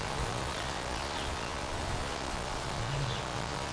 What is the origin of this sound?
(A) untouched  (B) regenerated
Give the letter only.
B